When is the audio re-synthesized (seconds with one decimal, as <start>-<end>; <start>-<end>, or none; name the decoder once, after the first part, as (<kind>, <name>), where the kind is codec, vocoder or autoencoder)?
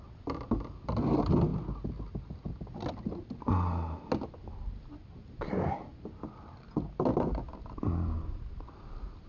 none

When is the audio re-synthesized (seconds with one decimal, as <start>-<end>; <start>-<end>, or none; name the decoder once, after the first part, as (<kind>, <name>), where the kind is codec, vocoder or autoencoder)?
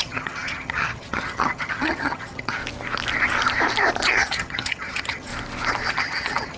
0.0-2.6 (vocoder, HiFi-GAN); 4.1-5.3; 5.9-6.6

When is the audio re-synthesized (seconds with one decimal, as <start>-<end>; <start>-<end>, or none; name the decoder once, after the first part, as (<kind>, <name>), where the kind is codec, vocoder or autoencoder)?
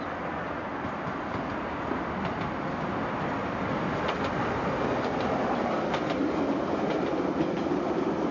none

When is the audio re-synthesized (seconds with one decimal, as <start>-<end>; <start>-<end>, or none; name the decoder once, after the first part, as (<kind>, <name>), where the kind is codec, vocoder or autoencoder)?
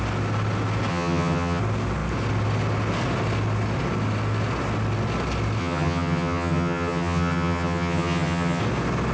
0.9-1.6 (vocoder, HiFi-GAN); 5.6-8.6